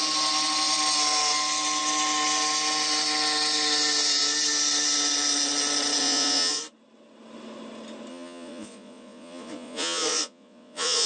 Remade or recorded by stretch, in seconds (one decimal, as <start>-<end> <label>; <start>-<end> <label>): 0.0-6.0 recorded; 6.0-6.6 remade; 6.6-8.1 recorded; 8.1-11.1 remade